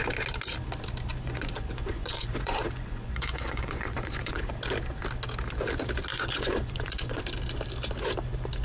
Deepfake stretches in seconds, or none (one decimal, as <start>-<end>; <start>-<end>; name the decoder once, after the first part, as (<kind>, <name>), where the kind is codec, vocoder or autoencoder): 1.1-4.5 (vocoder, Vocos); 6.1-7.2